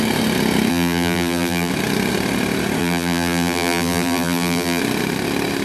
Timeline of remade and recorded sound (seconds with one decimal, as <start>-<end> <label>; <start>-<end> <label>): 0.0-0.7 recorded; 0.7-1.7 remade; 1.7-2.8 recorded; 2.8-4.8 remade; 4.8-5.6 recorded